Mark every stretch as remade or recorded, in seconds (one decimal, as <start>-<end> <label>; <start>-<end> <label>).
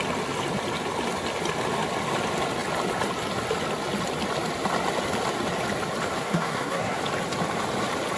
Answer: 0.0-6.2 recorded; 6.2-7.0 remade; 7.0-8.2 recorded